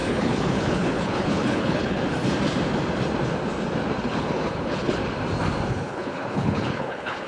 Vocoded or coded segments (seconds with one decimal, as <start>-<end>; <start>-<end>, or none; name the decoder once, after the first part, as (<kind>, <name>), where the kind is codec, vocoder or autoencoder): 0.0-2.0 (codec, HILCodec); 4.0-5.0; 5.7-7.3

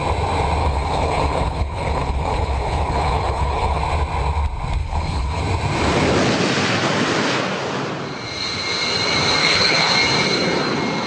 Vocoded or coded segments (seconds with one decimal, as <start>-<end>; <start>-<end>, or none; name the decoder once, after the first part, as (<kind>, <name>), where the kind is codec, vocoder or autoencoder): 0.6-3.8 (codec, HILCodec); 4.8-5.4; 9.4-9.9

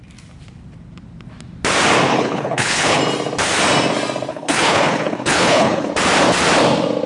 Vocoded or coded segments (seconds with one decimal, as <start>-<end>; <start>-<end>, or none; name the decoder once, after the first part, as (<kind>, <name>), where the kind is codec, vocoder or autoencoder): 2.1-3.0 (codec, HILCodec); 4.3-5.9

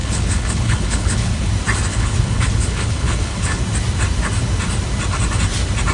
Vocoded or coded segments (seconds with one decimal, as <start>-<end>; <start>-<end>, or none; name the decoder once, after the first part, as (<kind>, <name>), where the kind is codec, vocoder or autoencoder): 0.0-1.5 (codec, HILCodec); 1.9-3.6

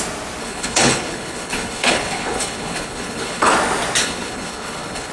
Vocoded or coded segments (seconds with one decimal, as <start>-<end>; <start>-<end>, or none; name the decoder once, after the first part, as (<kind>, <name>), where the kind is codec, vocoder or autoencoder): 0.4-3.5 (codec, HILCodec); 4.0-5.1

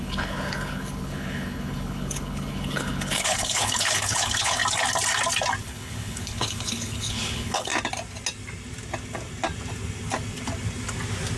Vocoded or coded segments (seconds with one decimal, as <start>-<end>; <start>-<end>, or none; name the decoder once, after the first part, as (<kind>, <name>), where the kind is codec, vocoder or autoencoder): 0.0-4.6 (codec, HILCodec); 5.6-7.7

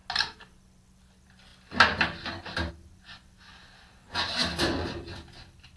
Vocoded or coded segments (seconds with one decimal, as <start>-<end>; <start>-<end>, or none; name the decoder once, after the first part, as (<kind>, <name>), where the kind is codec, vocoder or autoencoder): none